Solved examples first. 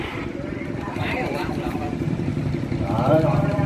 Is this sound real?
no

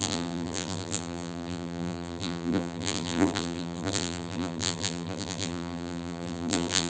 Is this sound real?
no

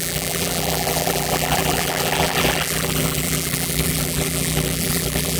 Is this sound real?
no